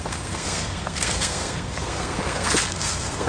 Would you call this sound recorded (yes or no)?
no